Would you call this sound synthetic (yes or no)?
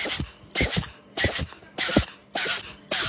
no